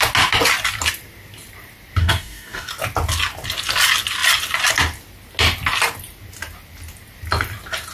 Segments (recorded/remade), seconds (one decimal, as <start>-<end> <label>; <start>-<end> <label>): 0.0-2.0 recorded; 2.0-2.7 remade; 2.7-7.9 recorded